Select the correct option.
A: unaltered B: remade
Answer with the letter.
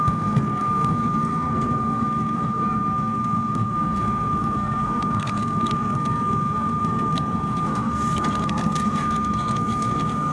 B